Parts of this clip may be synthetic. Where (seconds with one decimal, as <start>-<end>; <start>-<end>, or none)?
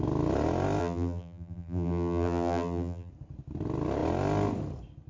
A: 0.8-3.1